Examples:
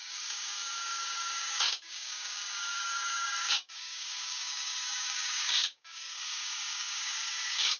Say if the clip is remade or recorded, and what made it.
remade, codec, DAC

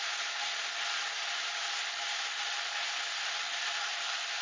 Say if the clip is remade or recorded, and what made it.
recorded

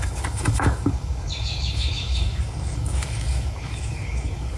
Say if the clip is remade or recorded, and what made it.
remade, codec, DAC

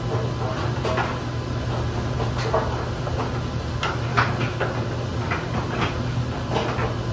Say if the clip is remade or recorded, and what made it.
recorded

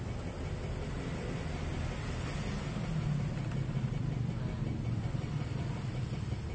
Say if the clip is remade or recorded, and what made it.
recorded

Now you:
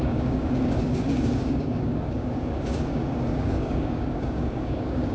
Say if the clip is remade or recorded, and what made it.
remade, codec, DAC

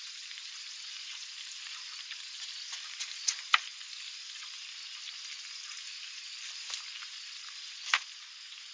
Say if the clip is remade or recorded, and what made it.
recorded